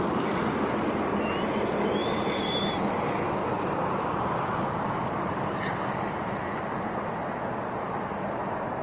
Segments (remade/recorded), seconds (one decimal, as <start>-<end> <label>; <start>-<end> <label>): 0.0-2.0 recorded; 2.0-2.8 remade; 2.8-3.4 recorded; 3.4-6.1 remade; 6.1-8.8 recorded